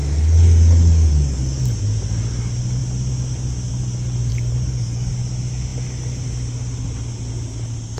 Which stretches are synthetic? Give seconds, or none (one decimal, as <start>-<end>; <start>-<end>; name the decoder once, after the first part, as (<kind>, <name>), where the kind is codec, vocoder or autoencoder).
0.0-1.6 (codec, DAC); 4.3-5.1